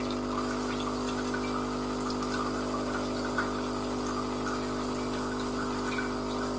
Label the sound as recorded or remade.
recorded